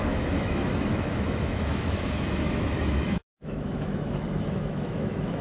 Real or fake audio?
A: fake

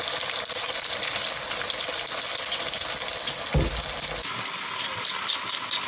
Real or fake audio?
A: real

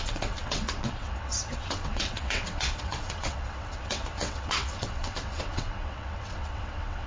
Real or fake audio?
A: fake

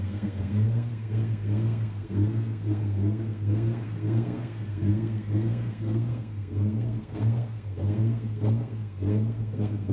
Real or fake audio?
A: fake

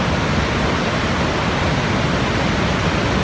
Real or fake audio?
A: real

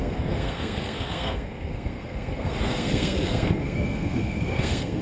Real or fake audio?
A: fake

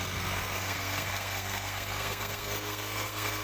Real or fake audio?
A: fake